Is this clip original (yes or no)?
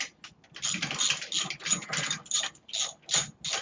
yes